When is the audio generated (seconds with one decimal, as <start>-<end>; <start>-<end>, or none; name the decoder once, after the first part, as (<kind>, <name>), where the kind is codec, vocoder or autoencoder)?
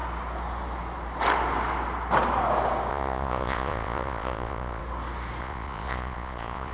2.9-4.8 (vocoder, Vocos); 5.4-6.7